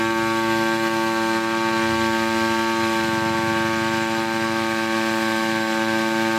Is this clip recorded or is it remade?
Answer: recorded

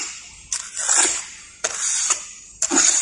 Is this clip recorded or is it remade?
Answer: recorded